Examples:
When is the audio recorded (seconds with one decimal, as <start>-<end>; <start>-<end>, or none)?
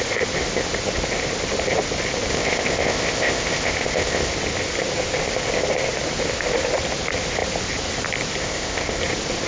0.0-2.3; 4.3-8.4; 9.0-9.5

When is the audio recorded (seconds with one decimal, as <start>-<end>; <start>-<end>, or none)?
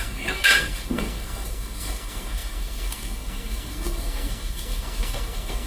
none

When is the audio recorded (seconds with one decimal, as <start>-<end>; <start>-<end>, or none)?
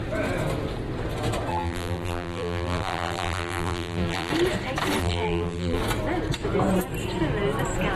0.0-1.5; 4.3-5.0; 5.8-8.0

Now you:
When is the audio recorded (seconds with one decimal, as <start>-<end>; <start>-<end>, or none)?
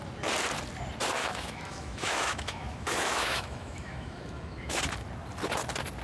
0.0-1.2; 4.8-6.0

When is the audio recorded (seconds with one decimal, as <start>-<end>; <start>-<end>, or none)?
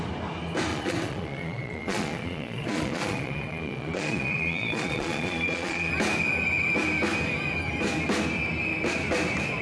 0.0-0.7; 5.9-9.6